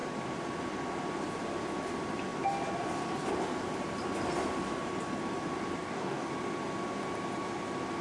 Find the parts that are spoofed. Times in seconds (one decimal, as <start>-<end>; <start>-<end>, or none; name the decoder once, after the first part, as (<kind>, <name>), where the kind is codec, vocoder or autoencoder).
5.8-6.3 (codec, DAC)